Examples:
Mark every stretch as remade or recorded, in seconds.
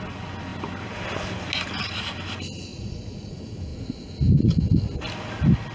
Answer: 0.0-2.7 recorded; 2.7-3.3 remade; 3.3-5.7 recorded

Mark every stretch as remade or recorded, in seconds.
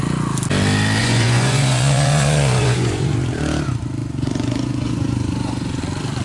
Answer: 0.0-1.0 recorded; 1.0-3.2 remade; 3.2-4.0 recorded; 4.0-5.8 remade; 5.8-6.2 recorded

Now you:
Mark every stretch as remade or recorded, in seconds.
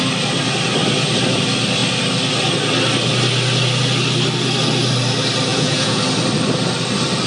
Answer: 0.0-5.5 recorded; 5.5-6.0 remade; 6.0-7.3 recorded